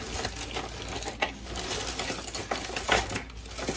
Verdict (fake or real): real